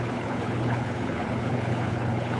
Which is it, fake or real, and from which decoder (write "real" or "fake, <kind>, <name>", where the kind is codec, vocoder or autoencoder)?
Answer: fake, codec, HILCodec